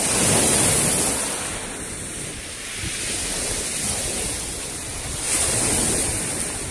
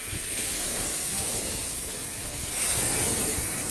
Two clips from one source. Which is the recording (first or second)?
first